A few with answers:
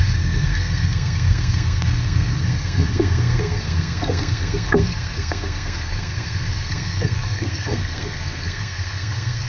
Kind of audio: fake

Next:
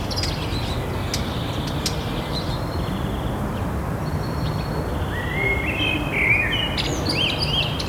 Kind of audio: real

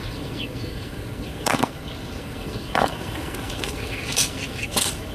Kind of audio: fake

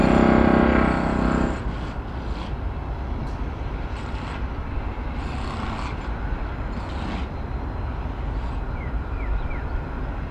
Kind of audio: real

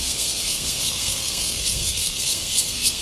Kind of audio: fake